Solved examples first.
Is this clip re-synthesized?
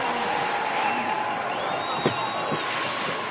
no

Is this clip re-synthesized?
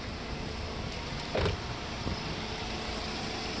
no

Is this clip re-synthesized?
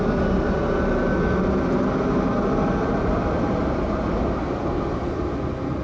no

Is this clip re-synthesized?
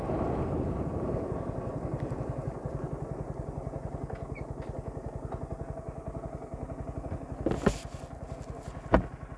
no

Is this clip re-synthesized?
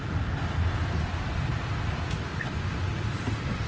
no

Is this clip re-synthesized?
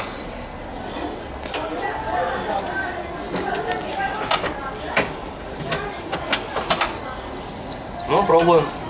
no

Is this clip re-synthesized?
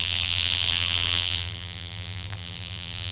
yes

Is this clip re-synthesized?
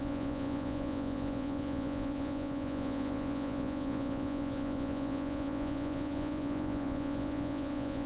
yes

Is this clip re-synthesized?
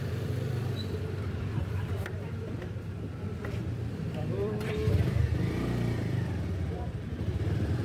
yes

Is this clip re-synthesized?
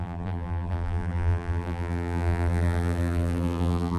yes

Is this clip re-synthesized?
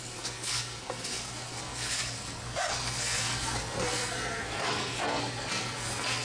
yes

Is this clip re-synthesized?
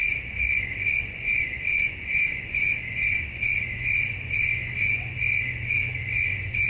yes